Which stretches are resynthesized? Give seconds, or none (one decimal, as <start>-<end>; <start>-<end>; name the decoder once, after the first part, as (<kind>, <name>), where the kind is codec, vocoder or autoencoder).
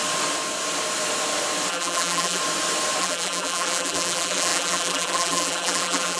1.7-2.4 (vocoder, BigVGAN v2); 3.0-6.2